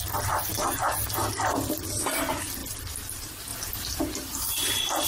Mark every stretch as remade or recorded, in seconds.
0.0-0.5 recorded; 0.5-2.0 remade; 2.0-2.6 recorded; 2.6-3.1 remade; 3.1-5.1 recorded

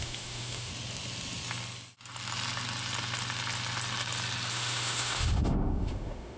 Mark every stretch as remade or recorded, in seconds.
0.0-0.7 remade; 0.7-4.5 recorded; 4.5-6.4 remade

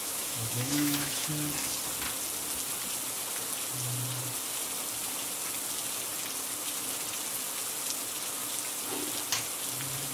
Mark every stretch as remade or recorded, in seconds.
0.0-1.3 remade; 1.3-10.1 recorded

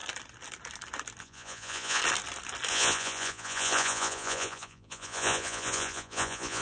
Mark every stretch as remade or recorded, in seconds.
0.0-1.2 recorded; 1.2-2.0 remade; 2.0-2.7 recorded; 2.7-6.6 remade

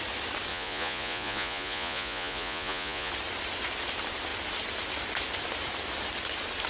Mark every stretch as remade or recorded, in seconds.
0.0-0.5 recorded; 0.5-3.1 remade; 3.1-6.7 recorded